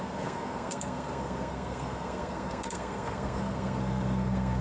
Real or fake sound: fake